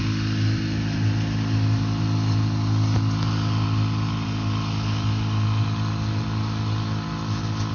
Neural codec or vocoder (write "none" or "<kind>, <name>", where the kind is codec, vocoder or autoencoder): none